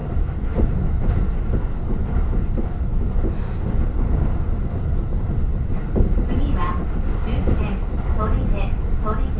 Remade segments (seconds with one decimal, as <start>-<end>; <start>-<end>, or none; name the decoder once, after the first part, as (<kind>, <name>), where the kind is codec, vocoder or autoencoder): none